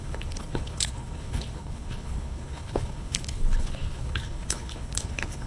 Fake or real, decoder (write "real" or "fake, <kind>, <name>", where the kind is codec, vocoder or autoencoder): fake, codec, HILCodec